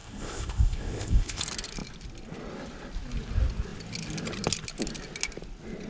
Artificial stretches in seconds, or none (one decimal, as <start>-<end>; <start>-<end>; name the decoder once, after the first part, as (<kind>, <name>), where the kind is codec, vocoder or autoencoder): 0.0-1.4 (codec, ZipCodec)

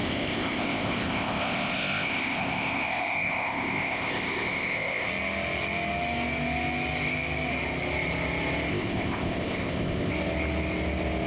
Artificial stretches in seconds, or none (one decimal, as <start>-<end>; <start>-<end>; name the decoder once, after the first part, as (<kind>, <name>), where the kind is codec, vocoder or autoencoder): 0.0-5.1 (codec, ZipCodec); 8.7-10.1

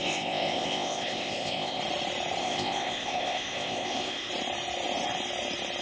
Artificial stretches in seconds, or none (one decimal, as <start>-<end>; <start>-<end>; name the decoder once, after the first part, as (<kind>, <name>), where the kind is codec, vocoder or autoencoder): 0.0-1.8 (codec, ZipCodec); 2.4-4.3

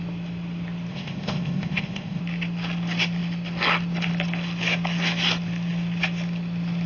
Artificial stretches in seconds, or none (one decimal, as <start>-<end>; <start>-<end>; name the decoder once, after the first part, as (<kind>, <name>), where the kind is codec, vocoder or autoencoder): 0.9-2.2 (codec, ZipCodec)

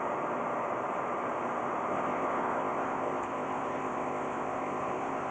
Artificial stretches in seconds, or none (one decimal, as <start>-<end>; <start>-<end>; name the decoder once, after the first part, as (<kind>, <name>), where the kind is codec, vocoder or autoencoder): 1.9-5.3 (codec, ZipCodec)

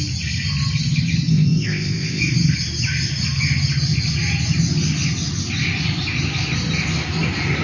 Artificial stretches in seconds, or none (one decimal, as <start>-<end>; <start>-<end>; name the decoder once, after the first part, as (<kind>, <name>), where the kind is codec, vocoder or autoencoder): 1.3-2.2 (codec, ZipCodec)

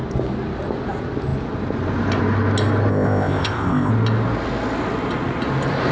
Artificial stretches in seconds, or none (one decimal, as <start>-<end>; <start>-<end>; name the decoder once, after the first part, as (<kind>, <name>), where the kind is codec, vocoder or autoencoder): 2.9-3.9 (codec, ZipCodec)